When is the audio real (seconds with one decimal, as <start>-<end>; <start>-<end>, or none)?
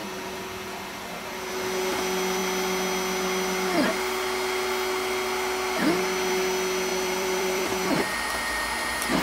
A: 0.0-6.9; 8.6-9.2